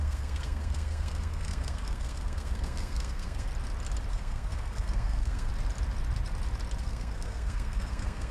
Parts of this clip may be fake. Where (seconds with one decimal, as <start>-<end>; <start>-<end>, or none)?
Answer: 0.0-3.5; 4.1-5.5; 6.8-8.3